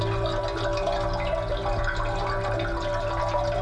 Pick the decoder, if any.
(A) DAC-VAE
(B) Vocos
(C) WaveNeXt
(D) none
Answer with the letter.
D